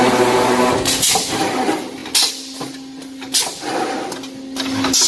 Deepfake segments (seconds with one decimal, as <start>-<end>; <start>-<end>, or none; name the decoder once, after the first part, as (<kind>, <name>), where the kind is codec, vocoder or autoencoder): none